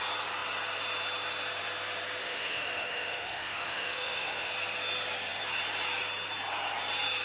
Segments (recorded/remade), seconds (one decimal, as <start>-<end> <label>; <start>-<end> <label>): 0.0-2.2 recorded; 2.2-4.5 remade; 4.5-7.2 recorded